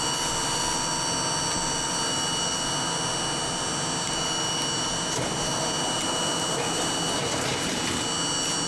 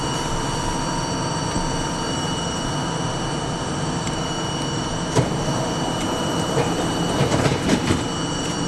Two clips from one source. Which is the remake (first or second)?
second